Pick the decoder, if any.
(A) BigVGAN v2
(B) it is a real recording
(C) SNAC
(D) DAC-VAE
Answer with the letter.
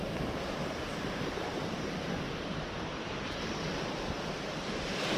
A